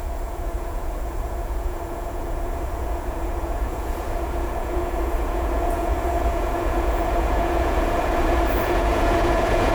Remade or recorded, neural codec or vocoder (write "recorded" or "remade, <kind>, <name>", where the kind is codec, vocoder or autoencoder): remade, vocoder, Vocos